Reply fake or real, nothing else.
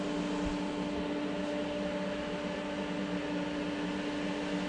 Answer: real